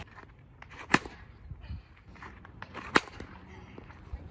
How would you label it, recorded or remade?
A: remade